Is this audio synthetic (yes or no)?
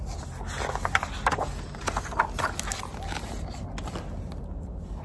no